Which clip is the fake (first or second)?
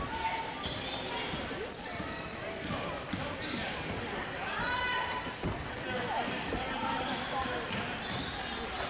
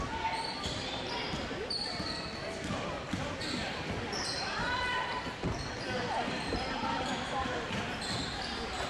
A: second